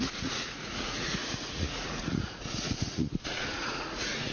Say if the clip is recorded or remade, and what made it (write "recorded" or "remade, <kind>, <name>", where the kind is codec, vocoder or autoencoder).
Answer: remade, vocoder, Vocos